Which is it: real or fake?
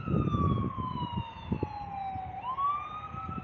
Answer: real